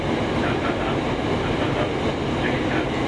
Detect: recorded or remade recorded